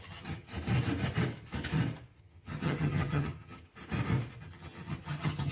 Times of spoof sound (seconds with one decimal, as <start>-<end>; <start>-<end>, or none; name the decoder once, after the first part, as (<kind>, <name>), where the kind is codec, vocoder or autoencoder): 0.0-0.5 (vocoder, HiFi-GAN); 2.2-3.7; 4.4-5.5

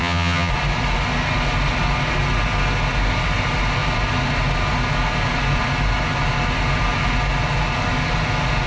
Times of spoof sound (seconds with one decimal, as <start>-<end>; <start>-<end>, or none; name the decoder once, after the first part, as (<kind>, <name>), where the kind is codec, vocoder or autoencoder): 0.0-0.5 (vocoder, HiFi-GAN)

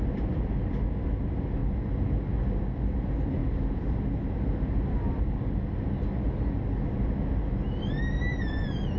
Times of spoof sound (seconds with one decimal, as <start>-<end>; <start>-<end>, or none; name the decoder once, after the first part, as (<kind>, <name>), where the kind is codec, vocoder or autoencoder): none